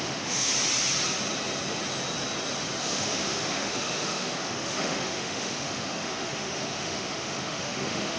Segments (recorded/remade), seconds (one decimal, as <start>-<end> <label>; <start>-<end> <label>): 0.0-0.5 remade; 0.5-2.8 recorded; 2.8-8.2 remade